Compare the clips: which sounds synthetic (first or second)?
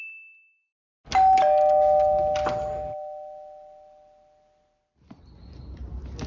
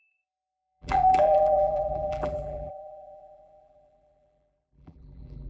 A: second